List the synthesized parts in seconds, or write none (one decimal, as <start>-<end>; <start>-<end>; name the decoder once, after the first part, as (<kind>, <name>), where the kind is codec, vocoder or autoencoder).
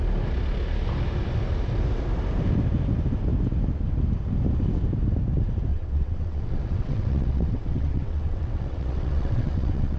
5.7-10.0 (vocoder, WaveNeXt)